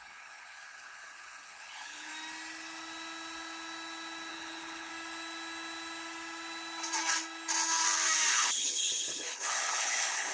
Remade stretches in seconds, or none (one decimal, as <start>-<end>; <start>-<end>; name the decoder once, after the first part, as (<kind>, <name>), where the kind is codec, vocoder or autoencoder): 0.0-2.1 (codec, HILCodec); 4.3-4.9; 8.3-10.3